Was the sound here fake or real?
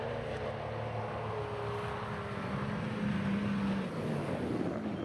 real